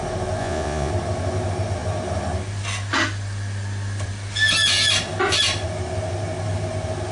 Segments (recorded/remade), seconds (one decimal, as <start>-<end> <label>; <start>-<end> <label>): 0.0-0.4 recorded; 0.4-0.9 remade; 0.9-7.1 recorded